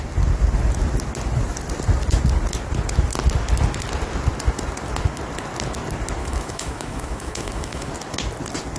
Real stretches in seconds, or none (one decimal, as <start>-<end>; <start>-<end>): 0.0-6.2; 7.9-8.8

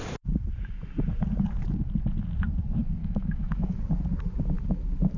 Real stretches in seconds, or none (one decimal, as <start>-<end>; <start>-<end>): 0.0-3.0; 3.8-5.2

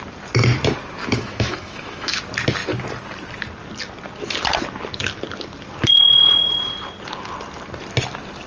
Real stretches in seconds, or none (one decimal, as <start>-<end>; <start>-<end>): 0.0-1.0; 2.2-8.5

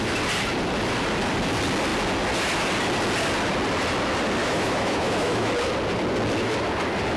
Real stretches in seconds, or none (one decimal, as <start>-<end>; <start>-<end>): 0.0-4.4; 5.5-7.2

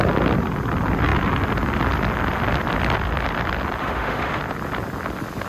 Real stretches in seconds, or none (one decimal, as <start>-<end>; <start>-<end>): 0.0-3.8; 4.4-5.5

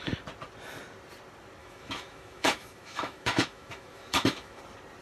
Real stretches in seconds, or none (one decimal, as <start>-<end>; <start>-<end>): 0.0-1.6; 4.6-5.0

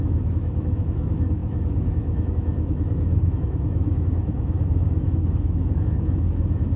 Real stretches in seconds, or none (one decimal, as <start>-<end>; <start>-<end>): none